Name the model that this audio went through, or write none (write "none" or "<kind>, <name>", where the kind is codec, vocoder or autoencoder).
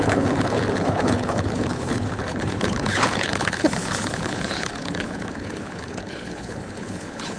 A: codec, HILCodec